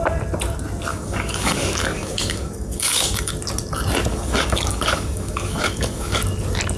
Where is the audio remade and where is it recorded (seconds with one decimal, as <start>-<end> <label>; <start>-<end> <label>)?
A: 0.0-0.9 recorded; 0.9-3.3 remade; 3.3-4.1 recorded; 4.1-6.2 remade; 6.2-6.8 recorded